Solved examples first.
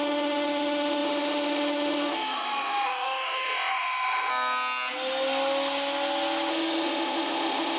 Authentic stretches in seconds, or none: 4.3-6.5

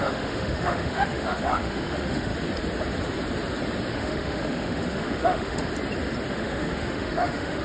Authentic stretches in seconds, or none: 2.3-3.9; 5.7-6.3

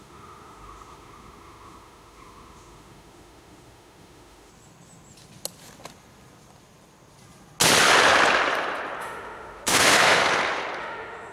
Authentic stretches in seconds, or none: 4.5-9.0; 10.2-10.8

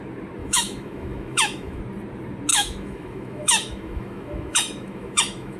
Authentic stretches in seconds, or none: 0.0-0.4; 1.8-2.5

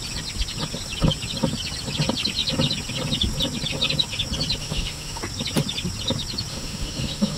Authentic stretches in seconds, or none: 0.0-4.6; 5.2-6.5

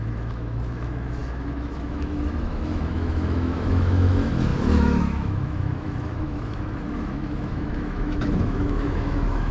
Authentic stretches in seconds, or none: none